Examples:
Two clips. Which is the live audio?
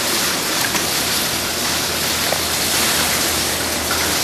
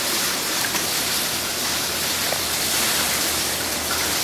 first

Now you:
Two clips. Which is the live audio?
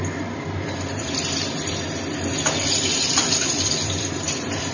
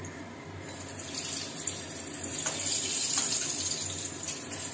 second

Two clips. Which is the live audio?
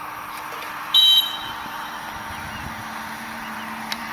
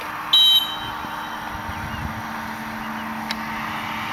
second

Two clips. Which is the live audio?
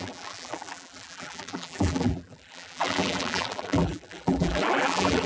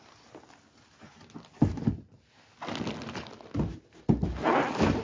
second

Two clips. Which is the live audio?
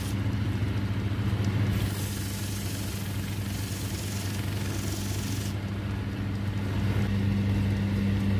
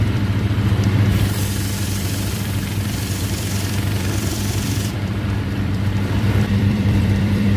first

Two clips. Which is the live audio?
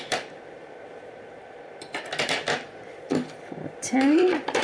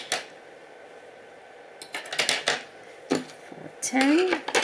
second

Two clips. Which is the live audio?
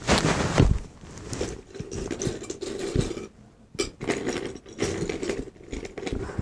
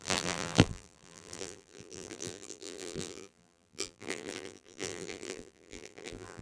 first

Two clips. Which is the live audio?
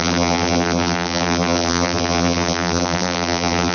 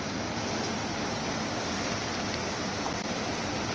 second